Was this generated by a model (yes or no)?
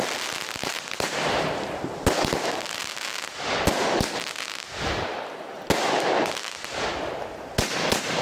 no